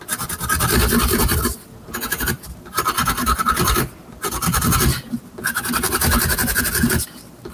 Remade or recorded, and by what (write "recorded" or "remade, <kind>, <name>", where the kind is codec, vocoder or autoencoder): recorded